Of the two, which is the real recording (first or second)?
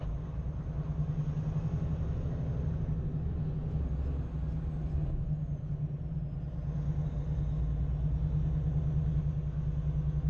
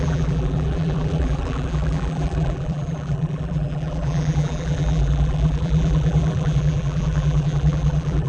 first